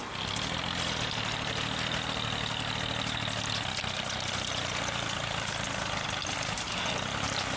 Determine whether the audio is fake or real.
real